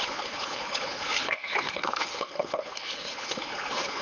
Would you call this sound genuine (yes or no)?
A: no